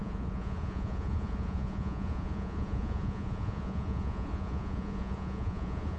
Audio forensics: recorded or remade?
remade